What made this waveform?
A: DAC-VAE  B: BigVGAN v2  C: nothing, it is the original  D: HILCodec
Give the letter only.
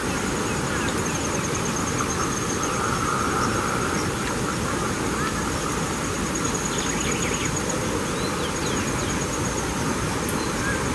C